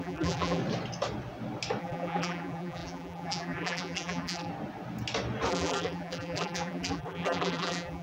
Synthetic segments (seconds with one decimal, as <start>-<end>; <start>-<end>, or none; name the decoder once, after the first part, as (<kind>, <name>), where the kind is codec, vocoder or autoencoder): 0.0-0.6 (vocoder, BigVGAN v2); 1.8-4.5; 5.5-8.0